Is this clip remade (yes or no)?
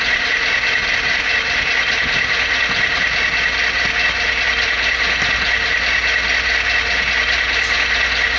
no